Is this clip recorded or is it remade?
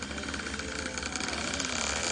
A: recorded